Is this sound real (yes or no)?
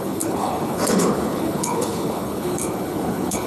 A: no